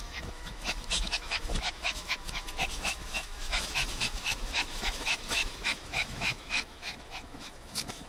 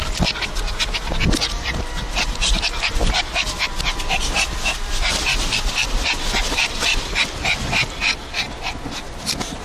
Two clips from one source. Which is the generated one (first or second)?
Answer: first